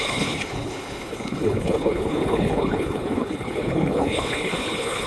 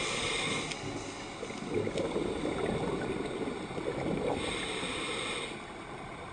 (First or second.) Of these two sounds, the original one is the second